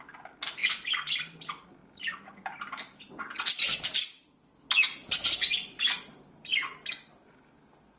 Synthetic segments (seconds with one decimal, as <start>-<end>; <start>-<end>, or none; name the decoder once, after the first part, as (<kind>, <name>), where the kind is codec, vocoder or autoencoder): none